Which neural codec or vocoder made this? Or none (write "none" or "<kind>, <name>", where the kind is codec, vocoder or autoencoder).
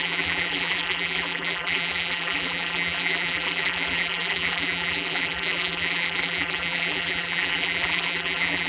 vocoder, BigVGAN v2